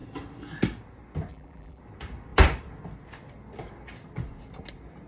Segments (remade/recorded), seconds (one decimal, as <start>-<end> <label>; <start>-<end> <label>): 0.0-1.3 recorded; 1.3-1.8 remade; 1.8-5.1 recorded